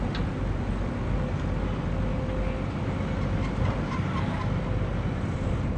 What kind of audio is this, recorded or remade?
recorded